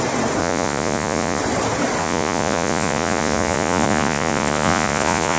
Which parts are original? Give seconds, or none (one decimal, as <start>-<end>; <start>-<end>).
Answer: 0.0-0.4; 1.4-2.0